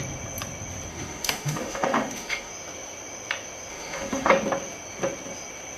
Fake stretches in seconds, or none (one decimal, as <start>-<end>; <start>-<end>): 0.9-2.5; 3.7-4.3